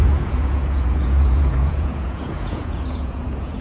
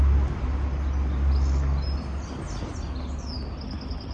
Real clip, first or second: second